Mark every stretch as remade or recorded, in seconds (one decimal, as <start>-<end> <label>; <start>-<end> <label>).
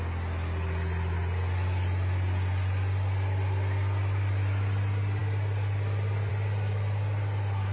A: 0.0-7.7 recorded